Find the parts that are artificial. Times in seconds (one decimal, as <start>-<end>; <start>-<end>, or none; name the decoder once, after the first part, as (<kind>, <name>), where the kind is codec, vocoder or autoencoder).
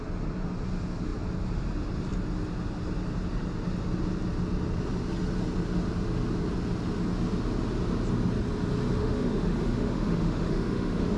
9.0-11.2 (autoencoder, DAC-VAE)